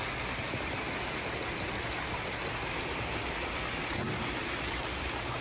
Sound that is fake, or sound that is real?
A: real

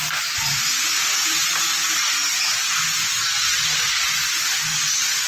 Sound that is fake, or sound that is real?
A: real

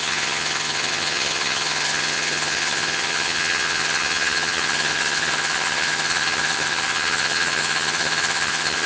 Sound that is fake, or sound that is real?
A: fake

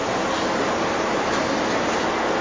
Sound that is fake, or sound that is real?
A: real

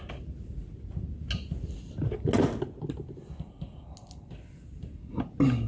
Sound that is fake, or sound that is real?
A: real